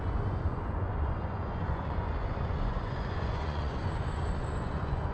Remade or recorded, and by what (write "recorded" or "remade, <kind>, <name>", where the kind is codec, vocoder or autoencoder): remade, vocoder, Vocos